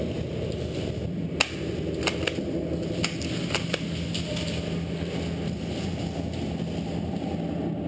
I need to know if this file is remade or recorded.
recorded